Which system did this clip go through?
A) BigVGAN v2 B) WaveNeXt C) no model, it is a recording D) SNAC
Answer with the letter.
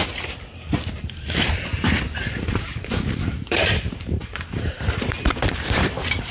A